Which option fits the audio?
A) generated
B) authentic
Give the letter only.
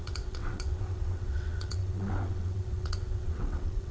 A